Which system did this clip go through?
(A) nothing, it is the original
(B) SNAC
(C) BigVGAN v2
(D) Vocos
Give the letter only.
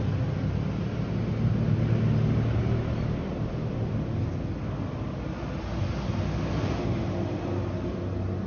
A